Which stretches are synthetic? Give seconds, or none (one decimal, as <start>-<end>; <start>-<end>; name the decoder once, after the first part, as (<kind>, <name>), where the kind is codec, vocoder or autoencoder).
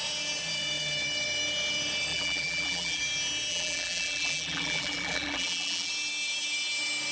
2.1-3.0 (vocoder, BigVGAN v2); 3.5-5.9